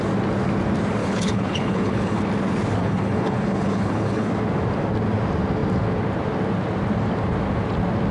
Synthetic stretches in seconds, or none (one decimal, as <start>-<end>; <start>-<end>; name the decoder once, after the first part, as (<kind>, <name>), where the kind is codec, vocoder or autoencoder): 1.0-2.2 (codec, HILCodec); 2.8-4.3